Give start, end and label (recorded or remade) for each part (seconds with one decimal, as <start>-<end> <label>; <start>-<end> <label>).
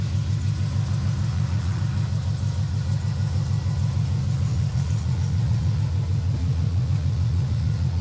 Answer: 0.0-1.3 recorded; 1.3-1.8 remade; 1.8-4.5 recorded; 4.5-5.8 remade; 5.8-6.4 recorded; 6.4-8.0 remade